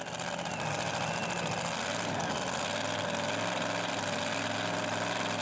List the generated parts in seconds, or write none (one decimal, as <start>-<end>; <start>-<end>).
none